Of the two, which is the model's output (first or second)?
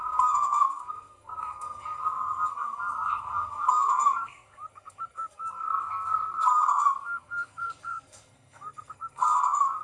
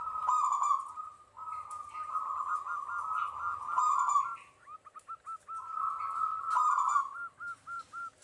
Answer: first